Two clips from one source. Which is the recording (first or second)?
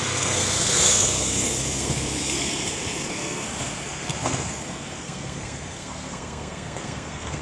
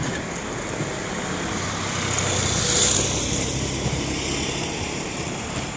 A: second